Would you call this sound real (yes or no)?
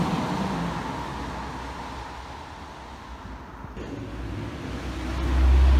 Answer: yes